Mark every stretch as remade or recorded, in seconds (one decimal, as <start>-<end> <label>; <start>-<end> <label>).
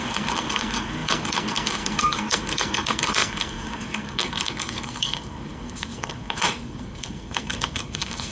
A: 0.0-8.3 remade